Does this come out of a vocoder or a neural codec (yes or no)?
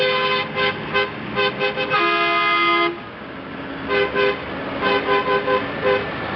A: no